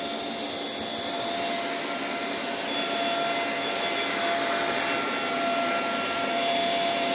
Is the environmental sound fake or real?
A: real